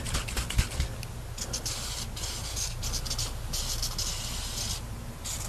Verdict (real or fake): real